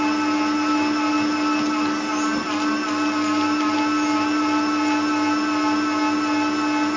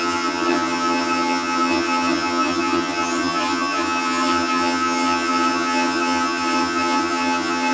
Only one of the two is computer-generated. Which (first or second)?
second